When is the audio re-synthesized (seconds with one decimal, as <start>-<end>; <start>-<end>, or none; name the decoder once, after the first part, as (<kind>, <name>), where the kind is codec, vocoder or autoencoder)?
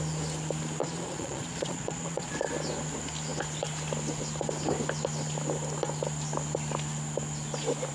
0.8-2.3 (vocoder, Vocos)